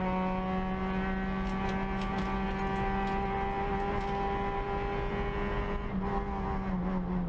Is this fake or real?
real